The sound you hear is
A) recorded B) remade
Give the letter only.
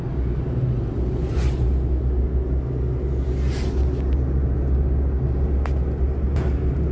A